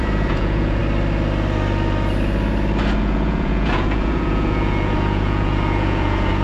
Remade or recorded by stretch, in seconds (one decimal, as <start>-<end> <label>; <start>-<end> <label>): 0.0-0.8 remade; 0.8-3.0 recorded; 3.0-6.4 remade